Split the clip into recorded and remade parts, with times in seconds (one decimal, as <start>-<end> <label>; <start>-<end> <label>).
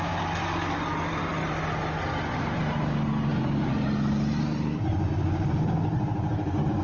0.0-3.3 recorded; 3.3-5.1 remade; 5.1-6.8 recorded